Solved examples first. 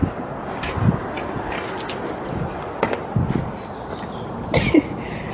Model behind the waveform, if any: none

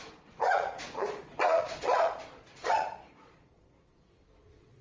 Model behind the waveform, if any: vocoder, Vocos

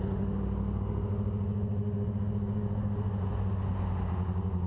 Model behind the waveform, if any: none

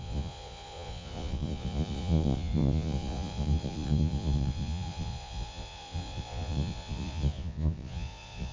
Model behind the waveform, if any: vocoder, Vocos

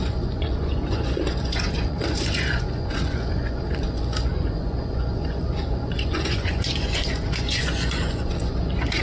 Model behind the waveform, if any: vocoder, Vocos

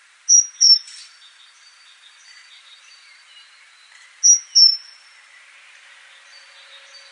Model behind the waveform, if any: none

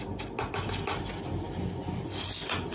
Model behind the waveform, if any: none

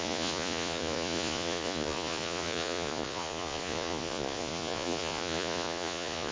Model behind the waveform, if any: vocoder, Vocos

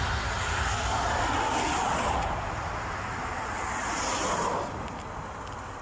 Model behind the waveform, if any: none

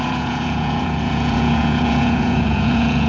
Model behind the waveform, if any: vocoder, Vocos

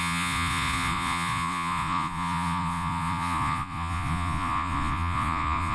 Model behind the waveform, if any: vocoder, Vocos